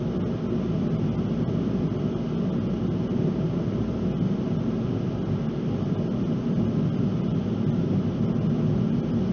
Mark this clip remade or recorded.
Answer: recorded